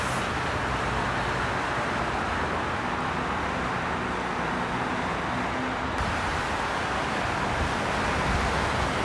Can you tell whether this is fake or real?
real